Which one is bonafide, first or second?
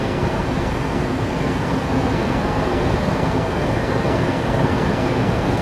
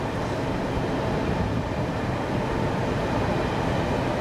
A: second